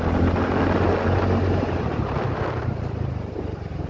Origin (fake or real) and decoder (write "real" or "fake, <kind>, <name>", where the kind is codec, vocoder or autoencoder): real